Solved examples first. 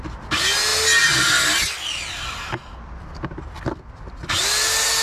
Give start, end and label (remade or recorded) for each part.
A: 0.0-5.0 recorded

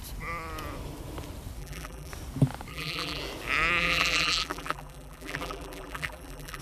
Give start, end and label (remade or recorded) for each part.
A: 0.0-1.6 recorded; 1.6-2.1 remade; 2.1-2.7 recorded; 2.7-3.2 remade; 3.2-3.8 recorded; 3.8-6.6 remade

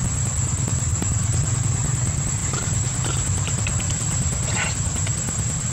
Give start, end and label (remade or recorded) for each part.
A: 0.0-0.9 recorded; 0.9-1.6 remade; 1.6-2.4 recorded; 2.4-5.7 remade

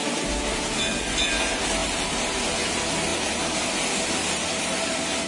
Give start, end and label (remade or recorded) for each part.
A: 0.0-1.8 recorded; 1.8-2.7 remade; 2.7-3.1 recorded; 3.1-5.3 remade

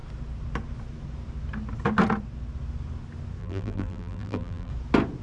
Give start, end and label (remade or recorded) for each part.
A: 0.0-3.4 recorded; 3.4-4.7 remade; 4.7-5.2 recorded

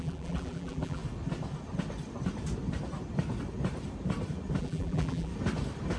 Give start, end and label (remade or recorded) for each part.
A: 0.0-1.0 remade; 1.0-4.6 recorded; 4.6-5.3 remade; 5.3-6.0 recorded

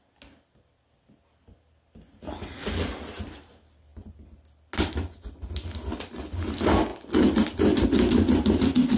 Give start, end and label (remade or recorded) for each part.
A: 0.0-9.0 recorded

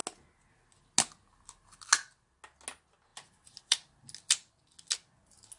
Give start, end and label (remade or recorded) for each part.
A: 0.0-5.6 recorded